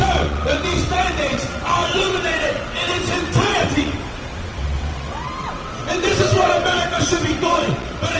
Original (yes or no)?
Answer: no